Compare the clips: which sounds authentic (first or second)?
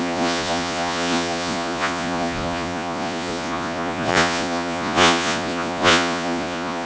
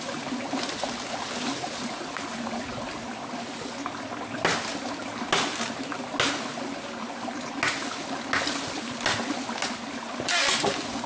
second